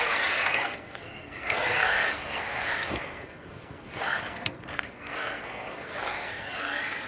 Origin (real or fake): fake